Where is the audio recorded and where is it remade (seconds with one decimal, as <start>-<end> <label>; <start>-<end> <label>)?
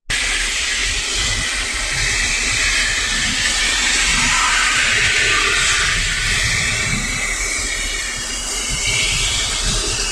0.0-10.1 recorded